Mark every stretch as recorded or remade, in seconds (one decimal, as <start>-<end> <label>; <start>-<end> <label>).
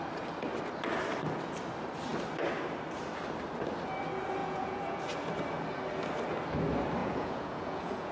0.0-4.4 recorded; 4.4-5.0 remade; 5.0-7.0 recorded; 7.0-8.1 remade